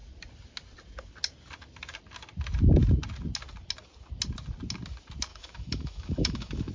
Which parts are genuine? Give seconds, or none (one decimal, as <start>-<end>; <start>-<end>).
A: 0.0-5.3